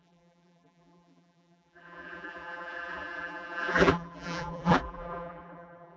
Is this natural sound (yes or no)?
no